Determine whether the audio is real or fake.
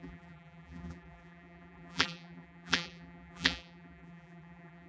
fake